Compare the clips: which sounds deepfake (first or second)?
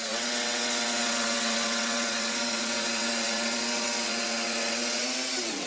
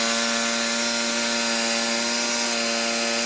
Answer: first